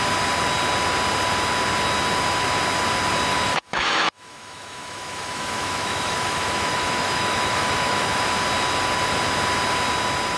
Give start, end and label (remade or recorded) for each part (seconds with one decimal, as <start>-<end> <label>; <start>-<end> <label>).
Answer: 0.0-3.3 recorded; 3.3-8.2 remade; 8.2-10.4 recorded